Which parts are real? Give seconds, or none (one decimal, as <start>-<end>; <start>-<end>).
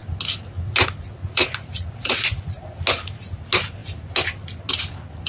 0.0-1.2; 2.6-5.3